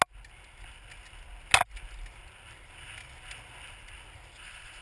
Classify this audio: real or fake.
real